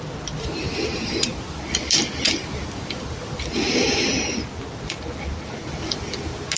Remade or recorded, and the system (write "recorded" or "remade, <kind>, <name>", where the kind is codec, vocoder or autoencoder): recorded